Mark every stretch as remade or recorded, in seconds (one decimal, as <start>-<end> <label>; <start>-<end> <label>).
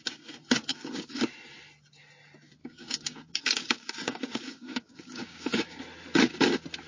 0.0-0.7 recorded; 0.7-1.2 remade; 1.2-2.6 recorded; 2.6-5.8 remade; 5.8-6.9 recorded